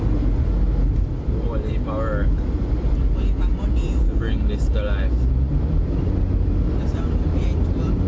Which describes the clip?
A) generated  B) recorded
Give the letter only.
B